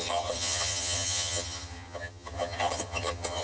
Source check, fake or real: fake